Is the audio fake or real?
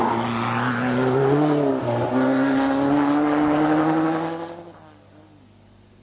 real